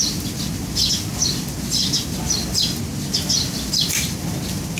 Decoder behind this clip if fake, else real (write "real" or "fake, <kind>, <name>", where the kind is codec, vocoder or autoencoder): real